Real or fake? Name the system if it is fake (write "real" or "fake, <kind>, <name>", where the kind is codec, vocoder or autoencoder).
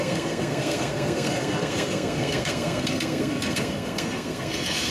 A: fake, codec, SNAC